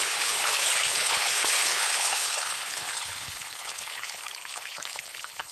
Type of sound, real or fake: fake